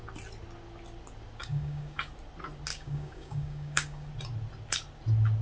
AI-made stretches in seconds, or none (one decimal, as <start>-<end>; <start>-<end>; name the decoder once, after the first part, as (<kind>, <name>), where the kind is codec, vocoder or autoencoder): 1.4-2.1 (codec, DAC); 2.7-4.1